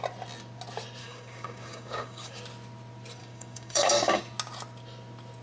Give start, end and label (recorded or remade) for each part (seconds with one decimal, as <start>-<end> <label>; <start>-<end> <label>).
0.0-1.0 recorded; 1.0-2.4 remade; 2.4-3.2 recorded; 3.2-4.2 remade; 4.2-5.4 recorded